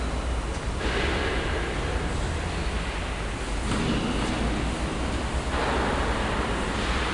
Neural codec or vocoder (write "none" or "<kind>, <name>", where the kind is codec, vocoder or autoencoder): none